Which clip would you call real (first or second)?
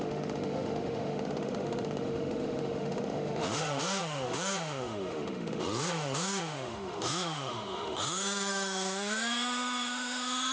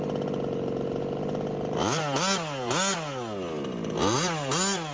second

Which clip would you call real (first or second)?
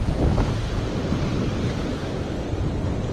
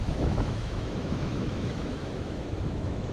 first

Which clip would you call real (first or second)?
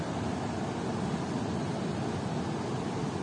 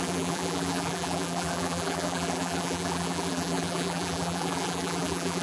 first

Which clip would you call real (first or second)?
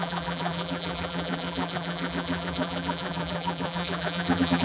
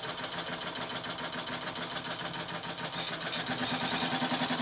second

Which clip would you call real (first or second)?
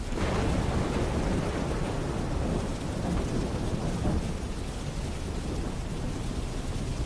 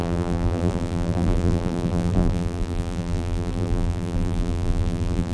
first